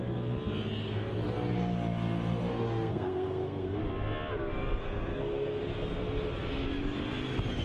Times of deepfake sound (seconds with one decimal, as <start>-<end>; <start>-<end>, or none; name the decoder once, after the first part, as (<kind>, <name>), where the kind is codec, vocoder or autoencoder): 2.5-3.8 (codec, SNAC); 4.8-5.6